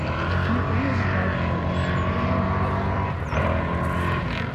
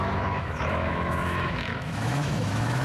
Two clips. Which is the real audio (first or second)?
first